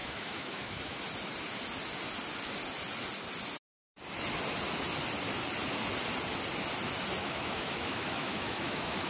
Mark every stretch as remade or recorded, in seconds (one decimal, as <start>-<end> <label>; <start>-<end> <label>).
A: 0.0-1.0 remade; 1.0-7.2 recorded; 7.2-9.1 remade